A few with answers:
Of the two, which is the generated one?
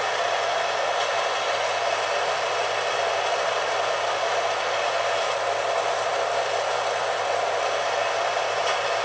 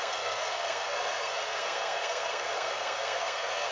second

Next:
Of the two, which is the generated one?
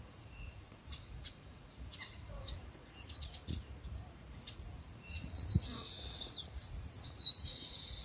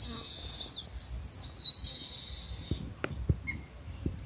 first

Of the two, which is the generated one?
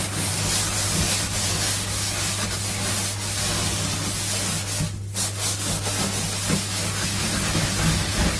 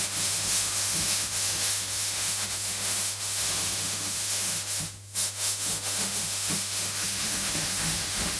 second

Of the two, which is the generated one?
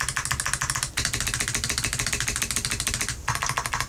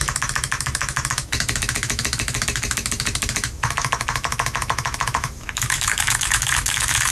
second